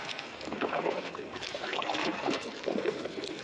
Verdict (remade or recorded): remade